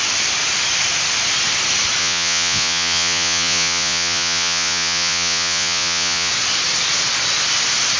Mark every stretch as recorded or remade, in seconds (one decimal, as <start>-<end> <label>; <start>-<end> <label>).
0.0-2.0 recorded; 2.0-6.3 remade; 6.3-8.0 recorded